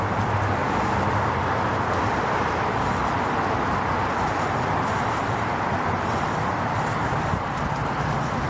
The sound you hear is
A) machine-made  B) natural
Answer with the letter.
A